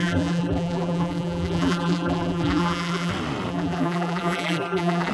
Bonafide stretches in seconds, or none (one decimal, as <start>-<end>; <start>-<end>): 3.1-3.5